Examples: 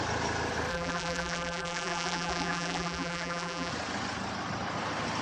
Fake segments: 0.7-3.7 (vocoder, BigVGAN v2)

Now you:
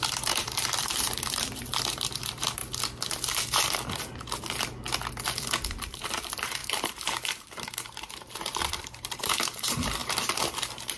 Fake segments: 0.0-2.6 (vocoder, BigVGAN v2); 5.8-11.0